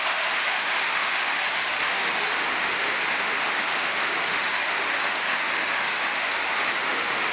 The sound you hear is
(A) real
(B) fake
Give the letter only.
B